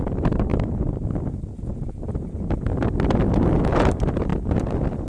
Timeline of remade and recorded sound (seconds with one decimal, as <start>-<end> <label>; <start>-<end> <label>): 0.0-5.1 recorded